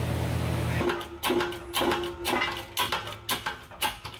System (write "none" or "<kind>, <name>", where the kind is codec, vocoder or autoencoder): none